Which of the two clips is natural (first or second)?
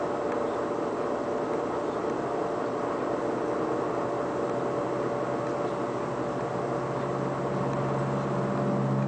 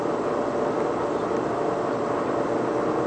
first